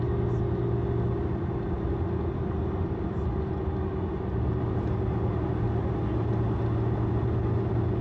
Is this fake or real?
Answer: real